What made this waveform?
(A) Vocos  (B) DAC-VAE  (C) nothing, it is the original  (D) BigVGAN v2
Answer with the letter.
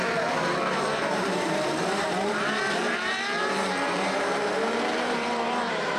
D